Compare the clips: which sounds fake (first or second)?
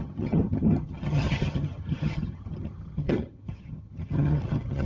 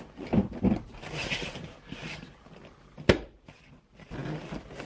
first